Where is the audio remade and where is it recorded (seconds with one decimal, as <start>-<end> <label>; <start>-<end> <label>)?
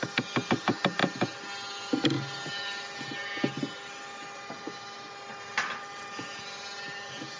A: 0.0-7.4 recorded